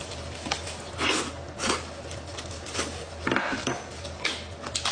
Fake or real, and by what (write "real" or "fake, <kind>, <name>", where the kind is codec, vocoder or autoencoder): real